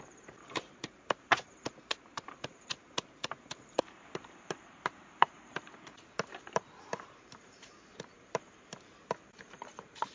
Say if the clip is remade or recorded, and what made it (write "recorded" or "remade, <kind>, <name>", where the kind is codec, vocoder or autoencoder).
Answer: remade, vocoder, BigVGAN v2